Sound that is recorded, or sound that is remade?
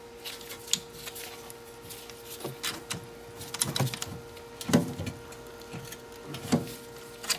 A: recorded